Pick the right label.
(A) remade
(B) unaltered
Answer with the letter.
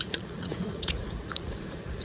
A